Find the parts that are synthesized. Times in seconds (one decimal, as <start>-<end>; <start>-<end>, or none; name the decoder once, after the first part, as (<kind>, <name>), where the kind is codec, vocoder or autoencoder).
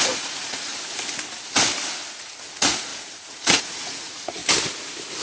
0.0-0.7 (vocoder, Vocos); 2.1-4.4